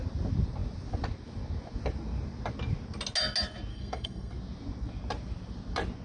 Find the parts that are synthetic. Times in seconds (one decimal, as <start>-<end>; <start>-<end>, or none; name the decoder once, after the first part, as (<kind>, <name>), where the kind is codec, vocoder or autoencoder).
3.7-4.3 (codec, SNAC)